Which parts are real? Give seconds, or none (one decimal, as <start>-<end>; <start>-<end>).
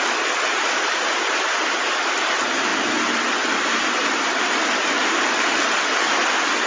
0.0-6.7